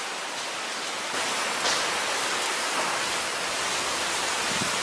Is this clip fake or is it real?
real